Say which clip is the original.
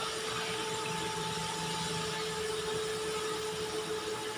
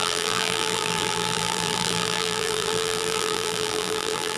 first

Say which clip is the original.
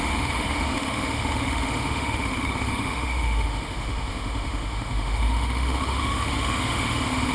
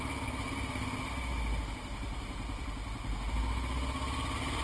second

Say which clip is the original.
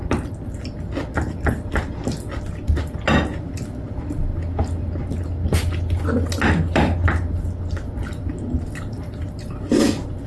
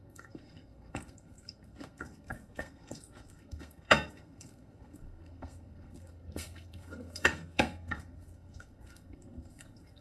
first